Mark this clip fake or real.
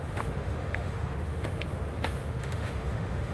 fake